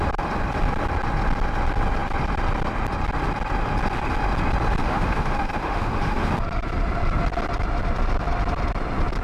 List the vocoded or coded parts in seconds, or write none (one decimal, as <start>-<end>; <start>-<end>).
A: 4.8-6.3